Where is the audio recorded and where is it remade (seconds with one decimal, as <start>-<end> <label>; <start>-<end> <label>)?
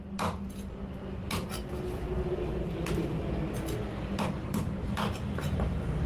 0.0-6.1 recorded